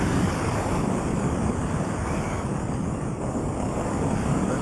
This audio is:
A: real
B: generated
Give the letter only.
B